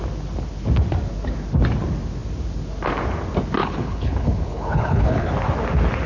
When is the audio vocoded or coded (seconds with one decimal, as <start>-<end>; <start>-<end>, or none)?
3.6-5.3